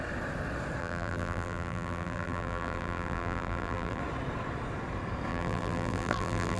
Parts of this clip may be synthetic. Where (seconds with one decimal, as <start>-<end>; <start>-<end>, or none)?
0.8-4.0; 5.3-6.6